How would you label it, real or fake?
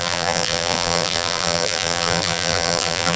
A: fake